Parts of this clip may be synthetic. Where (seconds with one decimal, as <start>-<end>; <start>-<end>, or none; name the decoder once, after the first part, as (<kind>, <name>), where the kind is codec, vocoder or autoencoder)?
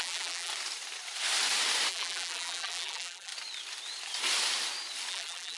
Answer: 0.0-0.5 (vocoder, BigVGAN v2); 1.9-3.3; 5.1-5.6